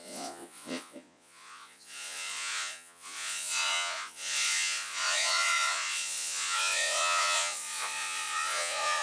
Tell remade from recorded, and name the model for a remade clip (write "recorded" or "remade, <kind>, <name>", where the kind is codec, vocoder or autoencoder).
remade, vocoder, Vocos